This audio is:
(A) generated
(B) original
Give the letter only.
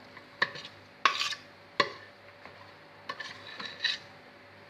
B